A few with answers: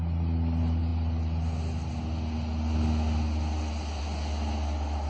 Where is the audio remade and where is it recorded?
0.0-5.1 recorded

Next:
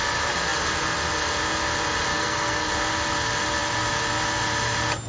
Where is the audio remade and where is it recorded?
0.0-2.1 recorded; 2.1-2.7 remade; 2.7-5.1 recorded